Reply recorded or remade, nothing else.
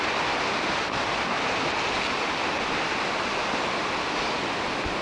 recorded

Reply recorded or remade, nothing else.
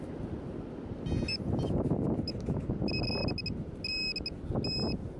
recorded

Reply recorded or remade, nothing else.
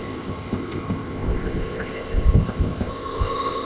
remade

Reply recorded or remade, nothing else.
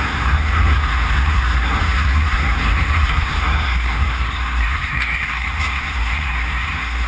remade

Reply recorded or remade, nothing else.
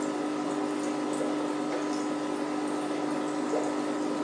recorded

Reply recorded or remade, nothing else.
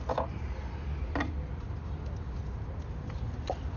recorded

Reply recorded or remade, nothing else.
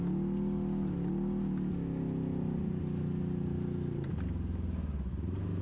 recorded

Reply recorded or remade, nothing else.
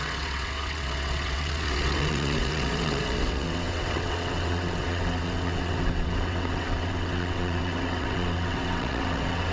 remade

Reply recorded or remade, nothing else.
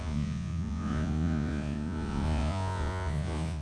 remade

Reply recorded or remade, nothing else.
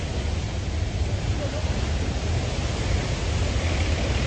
recorded